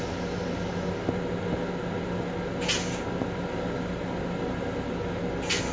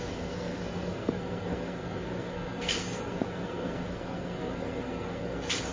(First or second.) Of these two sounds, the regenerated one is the second